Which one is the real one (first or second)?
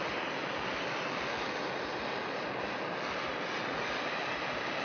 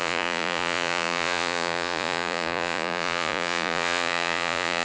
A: first